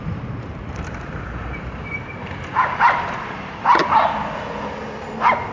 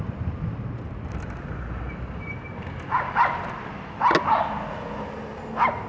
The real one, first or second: second